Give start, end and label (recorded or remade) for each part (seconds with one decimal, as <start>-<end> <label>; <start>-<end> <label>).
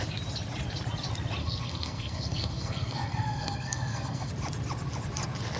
0.0-1.4 recorded; 1.4-4.3 remade; 4.3-5.6 recorded